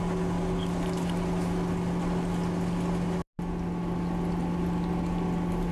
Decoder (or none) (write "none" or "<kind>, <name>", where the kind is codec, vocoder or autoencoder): none